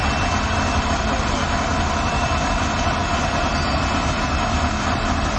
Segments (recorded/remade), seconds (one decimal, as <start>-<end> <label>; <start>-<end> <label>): 0.0-1.7 recorded; 1.7-2.3 remade; 2.3-5.4 recorded